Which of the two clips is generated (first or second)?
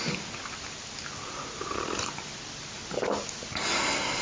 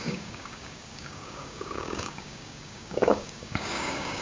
second